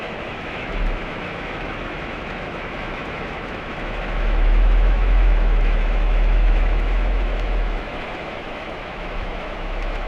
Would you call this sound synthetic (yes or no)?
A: yes